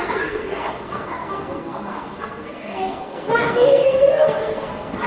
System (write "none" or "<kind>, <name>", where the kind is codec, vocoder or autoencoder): codec, SNAC